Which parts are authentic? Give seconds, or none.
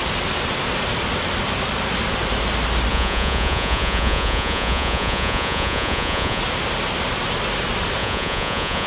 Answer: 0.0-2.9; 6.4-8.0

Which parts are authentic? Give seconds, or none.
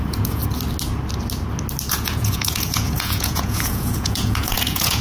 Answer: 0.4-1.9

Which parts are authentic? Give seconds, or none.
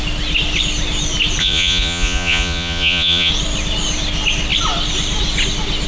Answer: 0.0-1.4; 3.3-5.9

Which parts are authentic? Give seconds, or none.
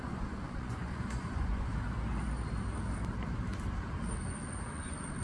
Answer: 1.7-4.7